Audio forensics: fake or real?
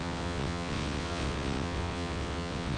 fake